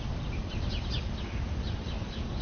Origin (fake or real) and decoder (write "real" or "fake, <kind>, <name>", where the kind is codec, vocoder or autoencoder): real